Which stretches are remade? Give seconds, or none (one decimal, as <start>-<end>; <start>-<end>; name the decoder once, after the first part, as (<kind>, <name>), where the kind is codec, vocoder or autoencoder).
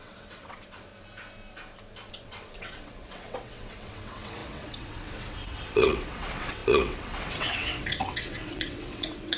0.0-0.9 (vocoder, WaveNeXt); 2.1-9.4